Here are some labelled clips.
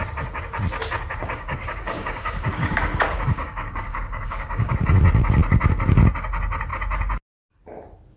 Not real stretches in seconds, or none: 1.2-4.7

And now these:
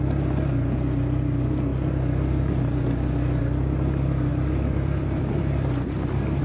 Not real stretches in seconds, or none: 4.3-6.4

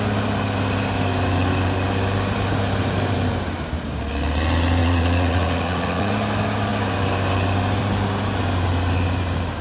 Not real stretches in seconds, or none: 4.8-6.1

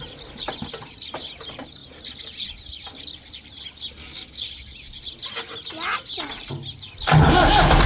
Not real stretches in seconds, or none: none